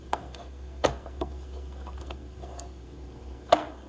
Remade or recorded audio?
remade